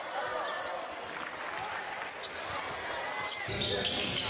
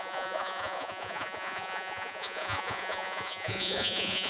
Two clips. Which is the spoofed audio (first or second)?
second